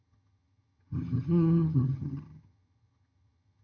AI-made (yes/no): yes